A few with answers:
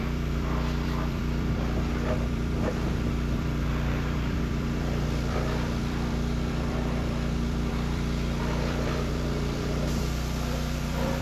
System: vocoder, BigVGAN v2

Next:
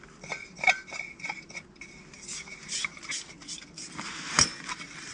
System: none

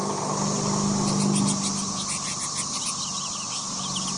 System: none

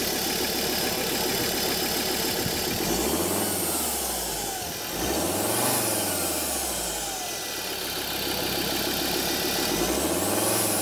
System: none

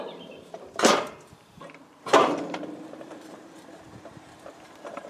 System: vocoder, BigVGAN v2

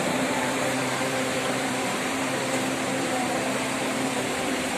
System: vocoder, BigVGAN v2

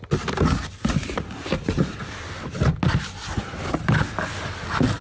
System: none